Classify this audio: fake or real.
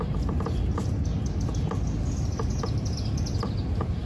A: real